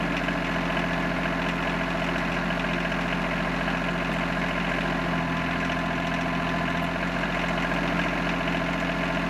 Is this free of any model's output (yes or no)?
yes